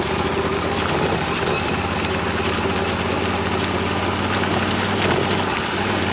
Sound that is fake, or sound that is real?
real